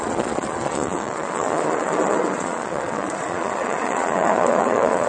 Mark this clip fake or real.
fake